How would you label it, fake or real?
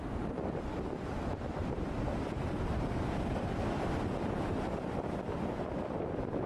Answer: fake